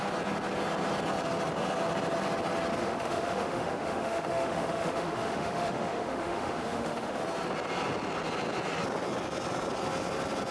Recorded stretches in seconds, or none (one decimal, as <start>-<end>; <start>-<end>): 0.0-2.8; 7.2-10.5